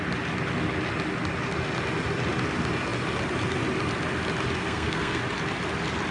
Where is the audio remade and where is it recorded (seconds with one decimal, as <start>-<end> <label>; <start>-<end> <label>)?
0.0-4.6 recorded; 4.6-5.2 remade; 5.2-6.1 recorded